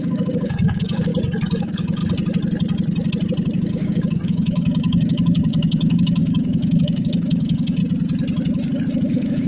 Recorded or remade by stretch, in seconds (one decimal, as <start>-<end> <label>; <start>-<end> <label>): 0.0-1.1 remade; 1.1-1.6 recorded; 1.6-2.0 remade; 2.0-3.7 recorded; 3.7-7.8 remade; 7.8-9.1 recorded; 9.1-9.5 remade